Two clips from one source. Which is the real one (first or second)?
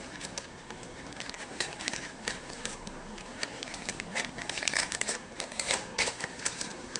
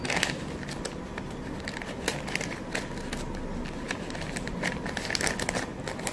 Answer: second